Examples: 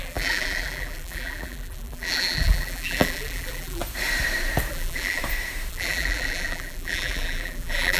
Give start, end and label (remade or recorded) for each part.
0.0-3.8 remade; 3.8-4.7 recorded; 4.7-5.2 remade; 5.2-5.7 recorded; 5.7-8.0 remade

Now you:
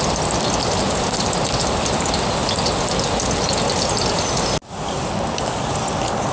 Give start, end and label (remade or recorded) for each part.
0.0-6.3 recorded

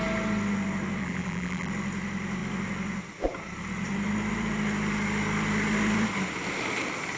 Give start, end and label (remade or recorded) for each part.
0.0-1.0 recorded; 1.0-1.7 remade; 1.7-7.2 recorded